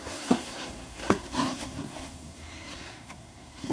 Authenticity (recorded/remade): remade